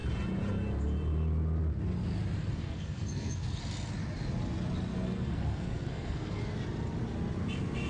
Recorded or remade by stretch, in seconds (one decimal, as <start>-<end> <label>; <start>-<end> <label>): 0.0-2.4 recorded; 2.4-3.6 remade; 3.6-4.9 recorded; 4.9-6.4 remade; 6.4-7.9 recorded